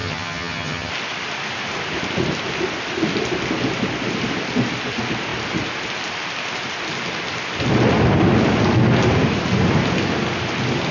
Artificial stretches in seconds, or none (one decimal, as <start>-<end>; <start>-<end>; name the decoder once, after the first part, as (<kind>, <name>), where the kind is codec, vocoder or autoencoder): 0.0-0.9 (vocoder, HiFi-GAN)